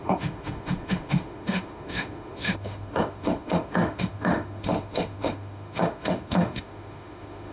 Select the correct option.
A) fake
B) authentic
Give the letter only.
A